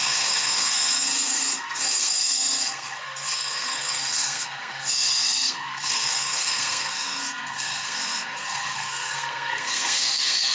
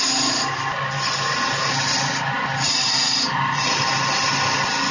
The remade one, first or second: first